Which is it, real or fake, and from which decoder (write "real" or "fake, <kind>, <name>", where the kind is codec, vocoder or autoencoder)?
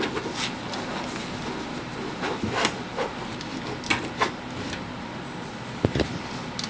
real